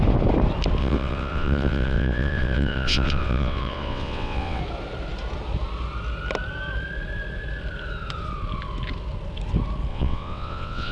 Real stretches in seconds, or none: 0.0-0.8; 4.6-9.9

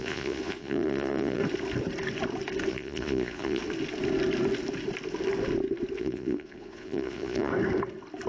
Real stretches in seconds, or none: 1.4-2.7; 3.6-6.0; 7.5-8.3

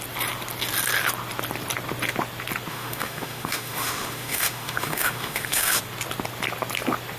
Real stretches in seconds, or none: 0.0-2.7; 5.8-7.2